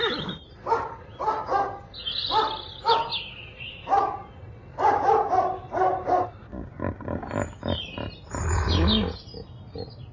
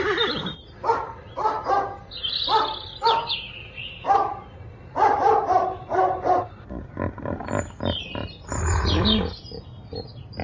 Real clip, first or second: first